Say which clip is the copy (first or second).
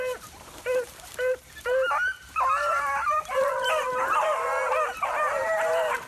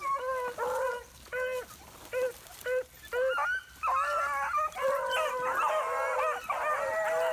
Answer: first